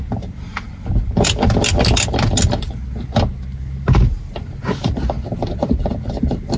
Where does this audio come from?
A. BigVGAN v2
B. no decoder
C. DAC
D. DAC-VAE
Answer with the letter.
B